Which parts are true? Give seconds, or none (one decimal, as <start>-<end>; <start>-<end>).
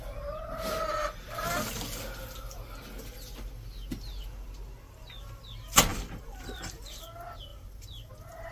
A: 0.0-5.9; 7.0-7.5; 8.1-8.5